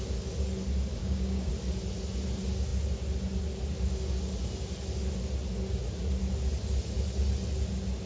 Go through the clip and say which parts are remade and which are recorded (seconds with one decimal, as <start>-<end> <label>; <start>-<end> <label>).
0.0-1.0 recorded; 1.0-1.5 remade; 1.5-8.1 recorded